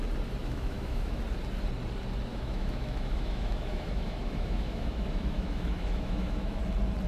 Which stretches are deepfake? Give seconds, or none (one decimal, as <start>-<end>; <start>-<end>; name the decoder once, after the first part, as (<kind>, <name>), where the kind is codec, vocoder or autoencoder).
0.4-1.2 (autoencoder, DAC-VAE); 2.3-6.6